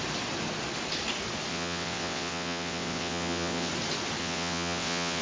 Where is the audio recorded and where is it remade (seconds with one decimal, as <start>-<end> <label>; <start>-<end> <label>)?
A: 0.0-1.5 recorded; 1.5-3.7 remade; 3.7-4.2 recorded; 4.2-5.2 remade